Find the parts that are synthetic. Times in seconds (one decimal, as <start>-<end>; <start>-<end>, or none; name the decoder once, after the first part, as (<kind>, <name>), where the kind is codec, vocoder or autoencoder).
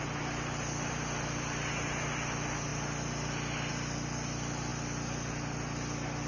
none